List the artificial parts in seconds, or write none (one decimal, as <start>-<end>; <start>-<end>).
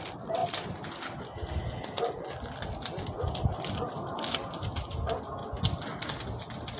none